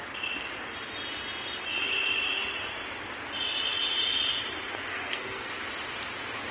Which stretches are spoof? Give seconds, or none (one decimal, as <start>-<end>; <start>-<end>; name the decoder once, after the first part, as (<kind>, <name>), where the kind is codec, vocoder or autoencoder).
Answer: 4.9-5.5 (codec, SNAC)